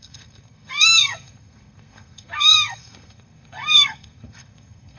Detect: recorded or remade remade